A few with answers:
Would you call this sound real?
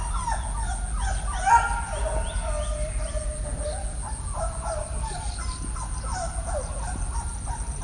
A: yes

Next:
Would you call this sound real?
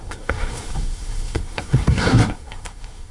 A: no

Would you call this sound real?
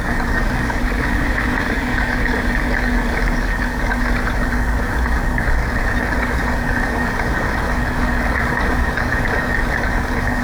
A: no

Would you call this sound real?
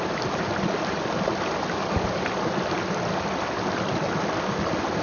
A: yes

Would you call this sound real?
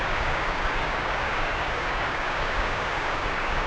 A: no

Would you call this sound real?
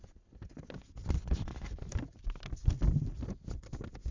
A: yes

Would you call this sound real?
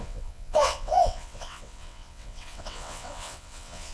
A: no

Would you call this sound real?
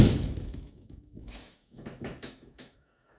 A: no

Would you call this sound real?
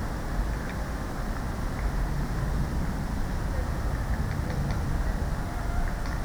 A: yes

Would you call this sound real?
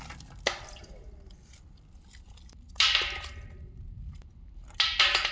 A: yes